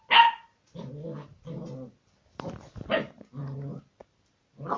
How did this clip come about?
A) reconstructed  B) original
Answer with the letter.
B